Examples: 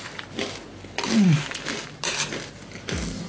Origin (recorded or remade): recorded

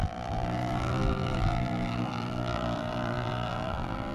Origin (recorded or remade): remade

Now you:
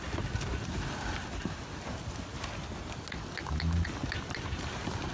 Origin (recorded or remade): recorded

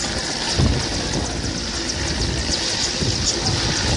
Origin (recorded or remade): recorded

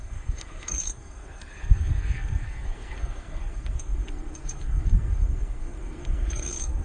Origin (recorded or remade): remade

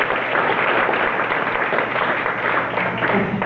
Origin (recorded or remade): recorded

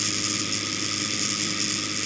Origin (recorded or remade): recorded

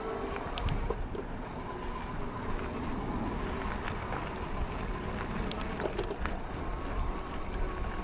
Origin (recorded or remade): recorded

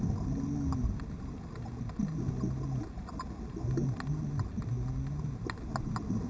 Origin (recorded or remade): recorded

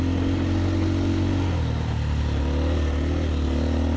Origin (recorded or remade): recorded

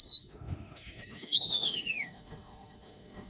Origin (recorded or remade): remade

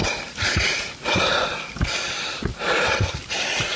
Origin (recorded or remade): recorded